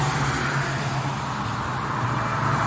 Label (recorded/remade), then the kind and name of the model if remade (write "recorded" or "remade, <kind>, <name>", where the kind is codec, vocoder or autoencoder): remade, vocoder, BigVGAN v2